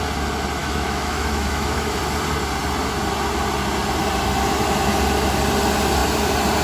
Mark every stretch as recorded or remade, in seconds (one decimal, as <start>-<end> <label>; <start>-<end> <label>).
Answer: 0.0-0.6 recorded; 0.6-2.0 remade; 2.0-6.6 recorded

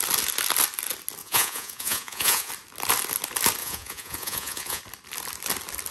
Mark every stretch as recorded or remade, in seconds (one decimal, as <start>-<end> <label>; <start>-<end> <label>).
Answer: 0.0-1.2 recorded; 1.2-2.5 remade; 2.5-3.6 recorded; 3.6-4.8 remade; 4.8-5.9 recorded

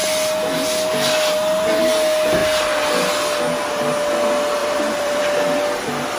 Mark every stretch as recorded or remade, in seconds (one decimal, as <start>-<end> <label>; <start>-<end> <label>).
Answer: 0.0-4.6 recorded; 4.6-5.2 remade; 5.2-6.2 recorded

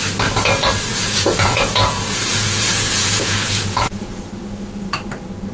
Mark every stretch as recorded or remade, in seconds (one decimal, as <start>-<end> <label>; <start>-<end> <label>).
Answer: 0.0-0.9 recorded; 0.9-4.2 remade; 4.2-5.5 recorded